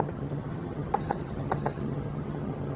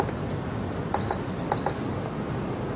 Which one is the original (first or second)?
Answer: second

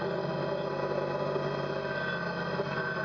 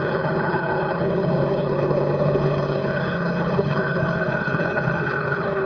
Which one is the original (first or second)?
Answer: first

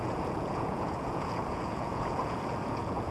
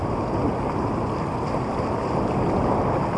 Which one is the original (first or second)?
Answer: second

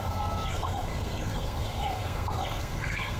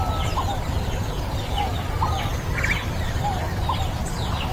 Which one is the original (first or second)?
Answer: second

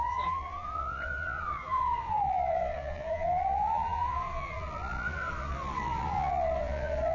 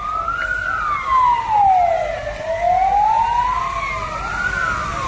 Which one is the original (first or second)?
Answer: second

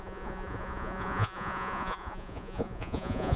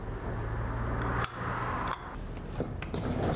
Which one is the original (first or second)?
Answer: second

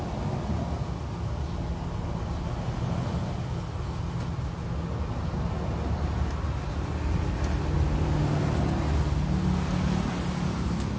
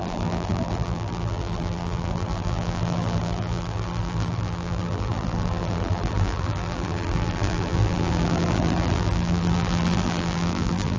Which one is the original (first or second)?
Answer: first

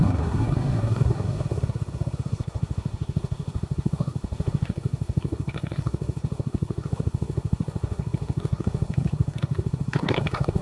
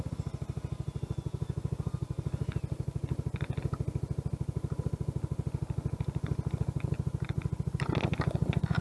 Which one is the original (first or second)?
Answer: second